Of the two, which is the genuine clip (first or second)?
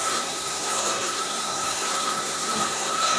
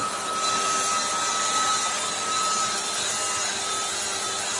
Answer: second